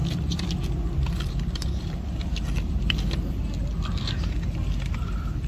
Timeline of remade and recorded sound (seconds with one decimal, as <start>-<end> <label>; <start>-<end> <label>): 0.0-3.3 remade; 3.3-5.5 recorded